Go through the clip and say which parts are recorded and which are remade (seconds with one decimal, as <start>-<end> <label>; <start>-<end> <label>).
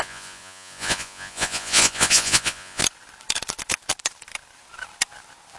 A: 0.0-2.8 remade; 2.8-5.6 recorded